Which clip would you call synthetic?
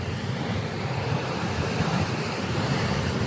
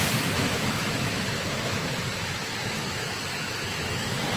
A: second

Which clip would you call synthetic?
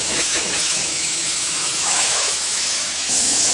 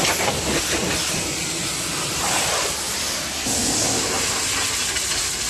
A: first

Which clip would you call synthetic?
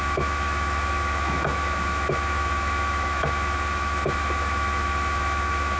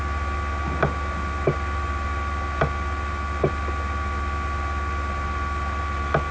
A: first